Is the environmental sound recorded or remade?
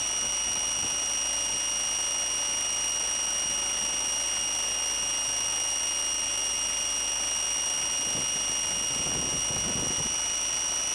recorded